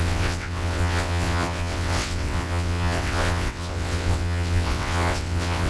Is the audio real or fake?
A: fake